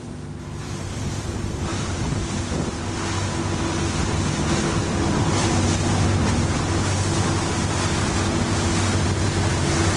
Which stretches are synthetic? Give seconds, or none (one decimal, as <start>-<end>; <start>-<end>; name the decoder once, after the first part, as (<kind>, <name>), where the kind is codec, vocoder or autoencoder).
0.6-1.2 (vocoder, BigVGAN v2); 1.7-2.8